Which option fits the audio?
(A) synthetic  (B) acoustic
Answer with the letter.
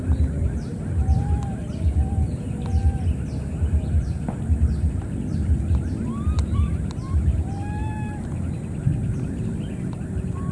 B